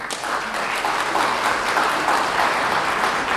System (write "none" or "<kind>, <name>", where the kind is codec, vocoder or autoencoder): none